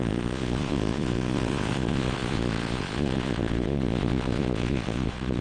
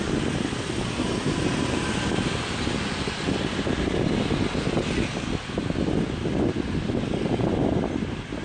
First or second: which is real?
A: second